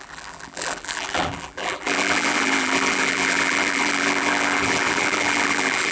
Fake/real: fake